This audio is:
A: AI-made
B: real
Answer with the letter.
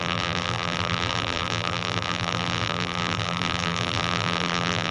A